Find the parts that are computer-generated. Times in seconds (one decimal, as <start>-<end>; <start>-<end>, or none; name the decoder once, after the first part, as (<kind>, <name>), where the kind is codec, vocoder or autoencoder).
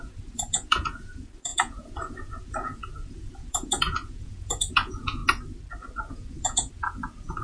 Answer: 0.0-5.2 (vocoder, Vocos); 6.1-7.4